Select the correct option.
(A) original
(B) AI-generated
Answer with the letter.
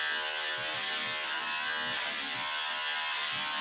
A